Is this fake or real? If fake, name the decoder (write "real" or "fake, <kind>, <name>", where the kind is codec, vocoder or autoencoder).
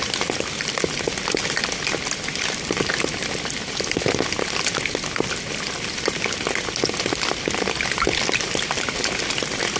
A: real